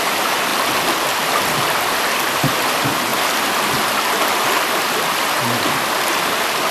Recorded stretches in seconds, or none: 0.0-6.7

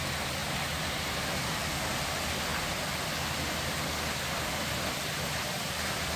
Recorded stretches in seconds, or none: 0.0-0.4; 1.9-6.2